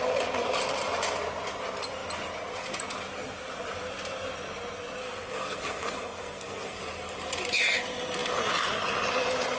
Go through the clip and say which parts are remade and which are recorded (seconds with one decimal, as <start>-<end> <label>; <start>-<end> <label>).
0.0-5.0 recorded; 5.0-6.8 remade; 6.8-9.6 recorded